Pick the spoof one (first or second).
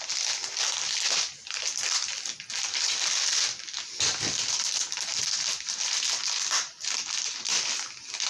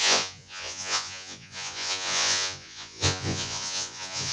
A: second